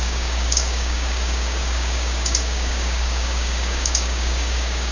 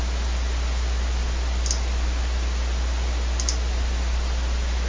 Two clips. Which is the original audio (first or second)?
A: second